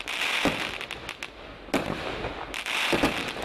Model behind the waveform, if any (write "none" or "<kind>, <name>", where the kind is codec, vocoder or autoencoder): none